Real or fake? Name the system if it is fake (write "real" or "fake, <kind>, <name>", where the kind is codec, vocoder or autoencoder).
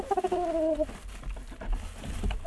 real